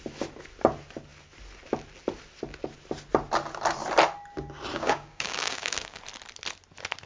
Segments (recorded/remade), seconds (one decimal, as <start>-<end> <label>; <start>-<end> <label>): 0.0-4.7 recorded; 4.7-6.0 remade; 6.0-7.1 recorded